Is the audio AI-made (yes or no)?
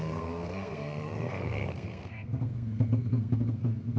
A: yes